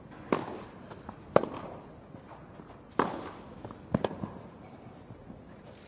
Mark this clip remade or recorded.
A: recorded